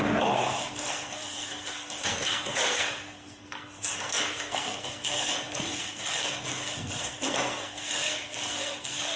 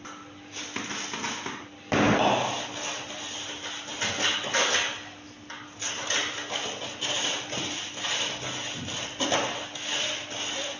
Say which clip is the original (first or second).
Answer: second